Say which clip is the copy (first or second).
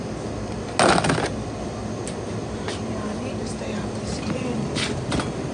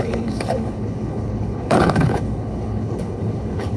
second